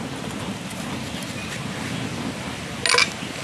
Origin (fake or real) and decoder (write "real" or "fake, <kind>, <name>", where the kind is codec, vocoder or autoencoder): real